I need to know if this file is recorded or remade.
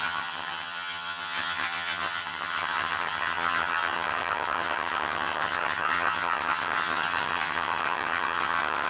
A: remade